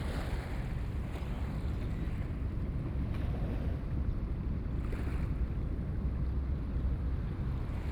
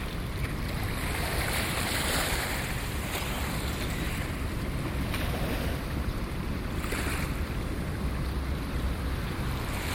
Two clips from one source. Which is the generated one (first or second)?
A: second